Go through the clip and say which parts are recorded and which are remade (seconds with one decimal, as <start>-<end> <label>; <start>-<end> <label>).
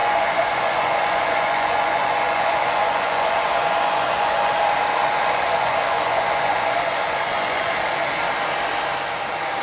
0.0-4.5 remade; 4.5-5.0 recorded; 5.0-7.7 remade; 7.7-9.6 recorded